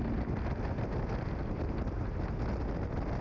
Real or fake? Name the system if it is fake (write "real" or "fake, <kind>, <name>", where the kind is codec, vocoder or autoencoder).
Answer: real